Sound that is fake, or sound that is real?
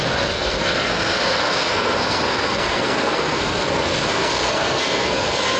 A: fake